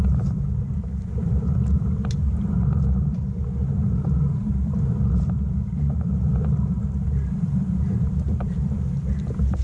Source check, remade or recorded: remade